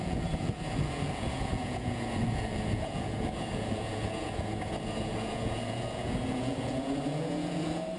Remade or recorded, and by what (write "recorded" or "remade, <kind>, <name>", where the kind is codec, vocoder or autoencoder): remade, vocoder, Vocos